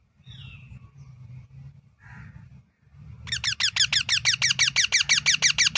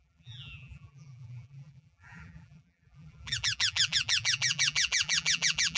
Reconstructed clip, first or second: second